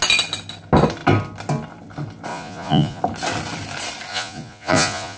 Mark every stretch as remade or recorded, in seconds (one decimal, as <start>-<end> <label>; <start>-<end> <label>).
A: 0.0-2.3 recorded; 2.3-3.0 remade; 3.0-4.1 recorded; 4.1-5.2 remade